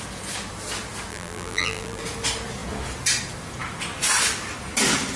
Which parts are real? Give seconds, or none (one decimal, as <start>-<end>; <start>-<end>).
0.0-1.1; 2.0-5.2